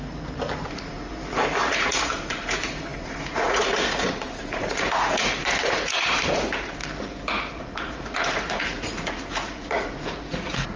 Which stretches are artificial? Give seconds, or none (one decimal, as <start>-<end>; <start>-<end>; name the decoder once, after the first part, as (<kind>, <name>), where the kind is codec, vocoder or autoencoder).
0.6-1.1 (vocoder, Vocos); 1.6-6.8; 7.5-10.8